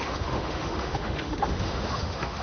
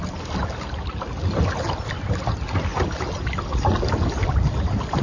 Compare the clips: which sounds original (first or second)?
second